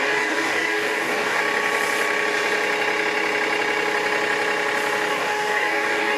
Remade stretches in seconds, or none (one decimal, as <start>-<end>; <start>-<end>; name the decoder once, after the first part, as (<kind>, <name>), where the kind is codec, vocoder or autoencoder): 0.0-1.4 (codec, DAC); 5.1-6.2

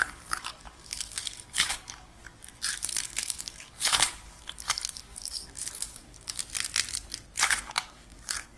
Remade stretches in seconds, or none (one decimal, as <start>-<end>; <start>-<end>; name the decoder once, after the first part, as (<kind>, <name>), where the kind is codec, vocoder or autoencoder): 0.0-2.2 (codec, DAC); 2.7-6.4; 7.5-8.6

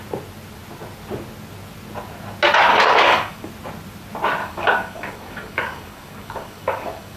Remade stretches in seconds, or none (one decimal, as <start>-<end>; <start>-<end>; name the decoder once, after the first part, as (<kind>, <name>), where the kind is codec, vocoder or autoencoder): 2.7-3.5 (codec, DAC); 4.4-7.2

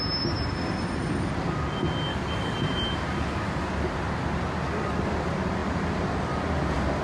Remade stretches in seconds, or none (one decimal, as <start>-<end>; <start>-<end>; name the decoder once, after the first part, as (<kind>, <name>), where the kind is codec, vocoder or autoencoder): 2.1-2.6 (codec, DAC)

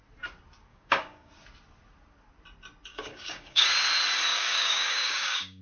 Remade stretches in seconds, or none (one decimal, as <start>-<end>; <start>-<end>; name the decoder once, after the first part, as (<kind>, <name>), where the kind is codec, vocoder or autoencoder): 0.7-1.3 (codec, DAC); 2.9-3.7; 4.3-5.6

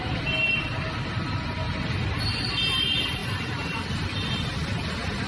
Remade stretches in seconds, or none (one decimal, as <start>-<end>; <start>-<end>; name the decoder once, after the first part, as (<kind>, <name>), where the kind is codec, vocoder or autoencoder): none